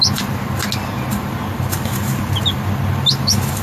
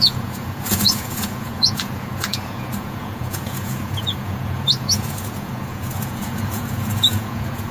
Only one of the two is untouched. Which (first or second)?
first